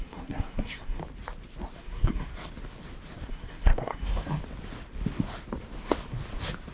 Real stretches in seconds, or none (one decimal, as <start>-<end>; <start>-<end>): 1.0-1.8; 2.3-3.3; 4.4-6.7